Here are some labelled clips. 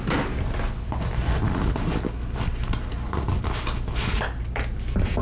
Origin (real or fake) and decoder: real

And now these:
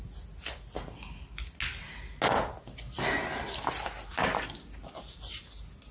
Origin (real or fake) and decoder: real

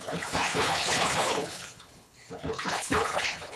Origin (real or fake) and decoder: fake, codec, HILCodec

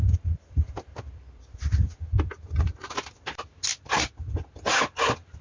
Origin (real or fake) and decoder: real